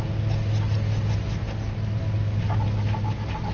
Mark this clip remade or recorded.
recorded